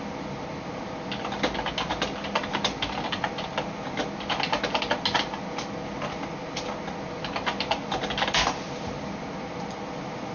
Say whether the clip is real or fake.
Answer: real